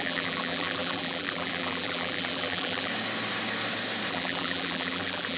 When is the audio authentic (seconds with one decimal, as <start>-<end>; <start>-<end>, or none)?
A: 2.9-4.1